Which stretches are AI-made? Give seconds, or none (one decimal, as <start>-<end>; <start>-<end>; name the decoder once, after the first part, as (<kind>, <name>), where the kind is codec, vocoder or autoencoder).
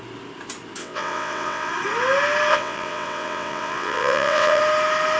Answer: 0.8-1.7 (vocoder, WaveNeXt); 2.5-4.6